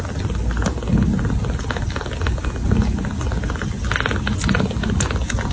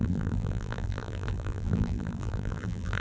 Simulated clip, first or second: second